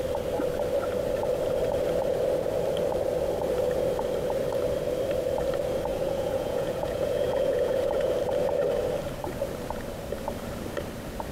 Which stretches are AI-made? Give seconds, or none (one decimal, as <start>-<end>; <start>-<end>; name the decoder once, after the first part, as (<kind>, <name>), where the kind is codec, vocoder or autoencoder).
5.9-8.1 (vocoder, Vocos)